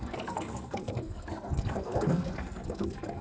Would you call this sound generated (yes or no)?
yes